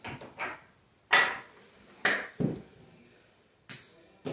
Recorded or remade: recorded